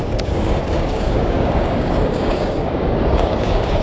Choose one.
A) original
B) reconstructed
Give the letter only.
B